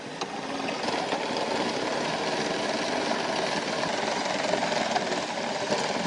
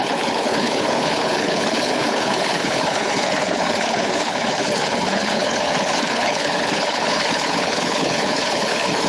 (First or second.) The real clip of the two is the first